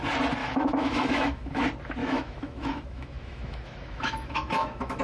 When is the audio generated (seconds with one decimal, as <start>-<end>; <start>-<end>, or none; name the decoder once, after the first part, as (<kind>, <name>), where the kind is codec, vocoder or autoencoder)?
0.4-1.6 (autoencoder, DAC-VAE); 2.0-5.0